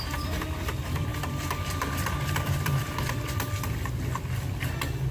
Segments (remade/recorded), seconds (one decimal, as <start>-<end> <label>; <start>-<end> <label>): 0.0-1.1 recorded; 1.1-4.0 remade; 4.0-5.1 recorded